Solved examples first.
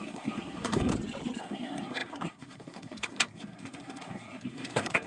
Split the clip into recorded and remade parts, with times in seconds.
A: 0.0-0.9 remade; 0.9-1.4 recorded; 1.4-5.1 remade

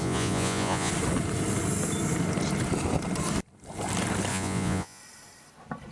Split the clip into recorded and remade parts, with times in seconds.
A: 0.0-0.9 remade; 0.9-4.3 recorded; 4.3-5.0 remade; 5.0-5.9 recorded

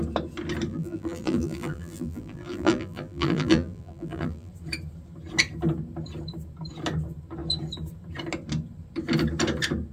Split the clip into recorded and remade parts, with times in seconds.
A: 0.0-0.7 recorded; 0.7-4.5 remade; 4.5-9.9 recorded